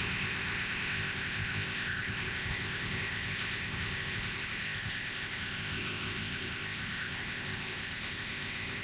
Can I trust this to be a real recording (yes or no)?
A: no